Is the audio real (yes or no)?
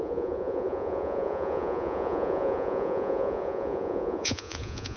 no